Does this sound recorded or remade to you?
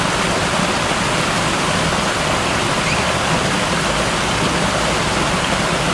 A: recorded